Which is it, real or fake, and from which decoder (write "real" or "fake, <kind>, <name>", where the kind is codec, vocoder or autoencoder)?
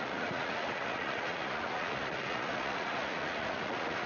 fake, vocoder, Vocos